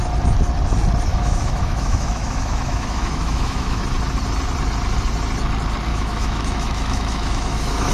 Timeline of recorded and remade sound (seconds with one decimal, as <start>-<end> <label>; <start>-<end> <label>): 0.0-1.1 recorded; 1.1-3.8 remade; 3.8-5.9 recorded; 5.9-7.9 remade